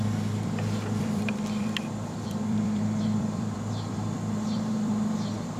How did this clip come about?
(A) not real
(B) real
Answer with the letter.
A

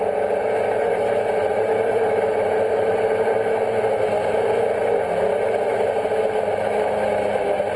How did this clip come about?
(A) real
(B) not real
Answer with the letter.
A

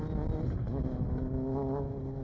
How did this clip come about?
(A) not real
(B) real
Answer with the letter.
B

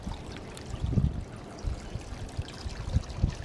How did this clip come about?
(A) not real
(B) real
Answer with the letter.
B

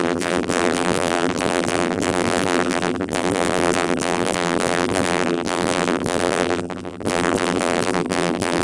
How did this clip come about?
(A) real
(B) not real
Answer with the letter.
B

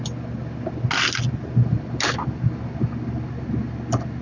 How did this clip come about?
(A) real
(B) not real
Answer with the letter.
A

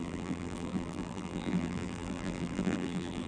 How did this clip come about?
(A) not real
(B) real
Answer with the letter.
A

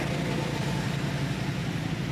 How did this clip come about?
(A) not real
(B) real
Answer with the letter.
B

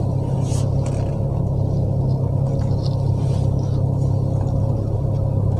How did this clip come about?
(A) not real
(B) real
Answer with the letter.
B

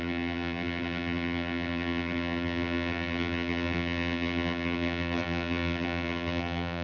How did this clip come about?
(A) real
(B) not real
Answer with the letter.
B